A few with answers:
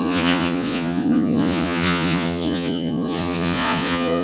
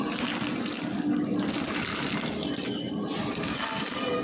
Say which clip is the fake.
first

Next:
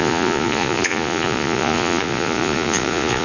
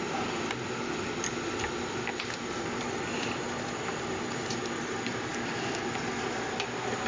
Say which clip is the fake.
first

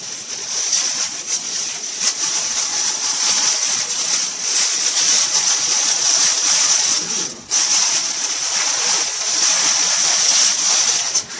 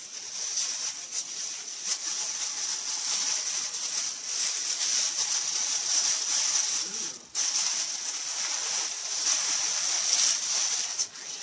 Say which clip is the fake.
first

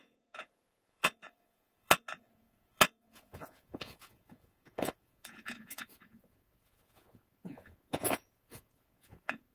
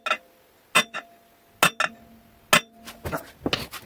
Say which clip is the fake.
first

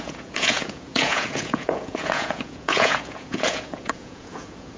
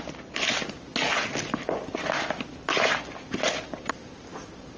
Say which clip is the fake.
first